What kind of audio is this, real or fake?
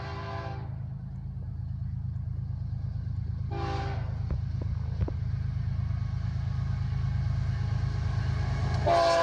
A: real